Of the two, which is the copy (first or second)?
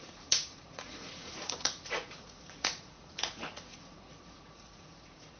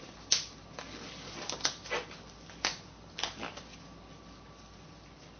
first